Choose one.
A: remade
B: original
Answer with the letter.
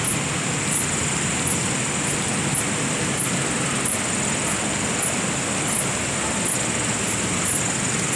B